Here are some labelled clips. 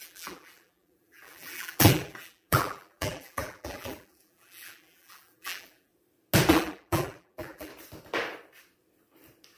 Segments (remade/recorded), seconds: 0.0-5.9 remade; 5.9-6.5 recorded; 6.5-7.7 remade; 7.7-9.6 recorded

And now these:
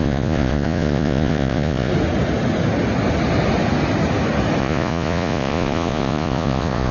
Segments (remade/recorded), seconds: 0.0-1.9 remade; 1.9-4.6 recorded; 4.6-6.9 remade